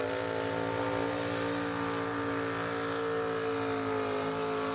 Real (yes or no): yes